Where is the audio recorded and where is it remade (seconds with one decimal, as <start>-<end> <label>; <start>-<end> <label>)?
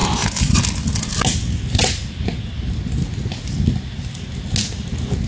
0.0-5.3 recorded